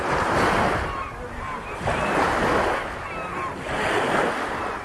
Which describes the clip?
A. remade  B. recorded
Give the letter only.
B